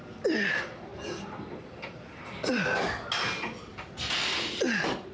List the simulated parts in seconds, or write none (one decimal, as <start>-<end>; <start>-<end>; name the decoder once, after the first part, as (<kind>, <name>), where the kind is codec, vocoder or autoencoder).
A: none